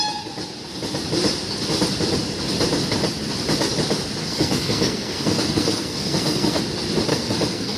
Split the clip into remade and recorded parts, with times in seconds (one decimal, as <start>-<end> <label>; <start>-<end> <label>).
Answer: 0.0-4.2 recorded; 4.2-6.6 remade; 6.6-7.1 recorded; 7.1-7.8 remade